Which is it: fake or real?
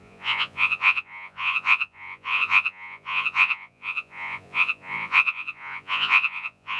fake